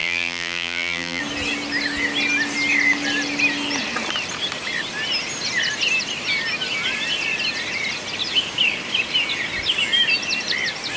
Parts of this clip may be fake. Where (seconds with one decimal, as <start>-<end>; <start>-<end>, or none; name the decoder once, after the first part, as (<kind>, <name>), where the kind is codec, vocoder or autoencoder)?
0.0-1.2 (vocoder, BigVGAN v2)